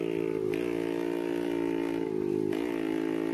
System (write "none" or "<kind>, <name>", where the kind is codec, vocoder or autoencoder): none